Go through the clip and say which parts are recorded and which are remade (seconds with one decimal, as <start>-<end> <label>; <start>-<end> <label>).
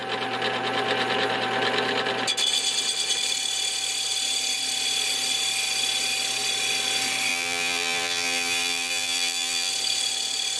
0.0-7.3 recorded; 7.3-9.7 remade; 9.7-10.6 recorded